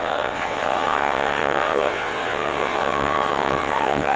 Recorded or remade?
remade